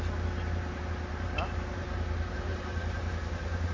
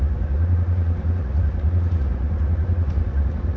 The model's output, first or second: second